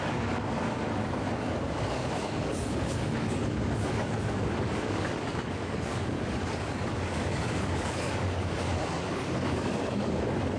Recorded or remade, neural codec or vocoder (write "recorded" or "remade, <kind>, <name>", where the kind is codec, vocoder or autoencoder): remade, codec, DAC